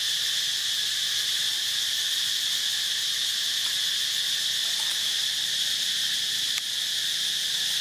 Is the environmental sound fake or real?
real